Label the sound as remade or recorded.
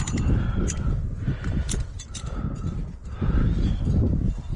remade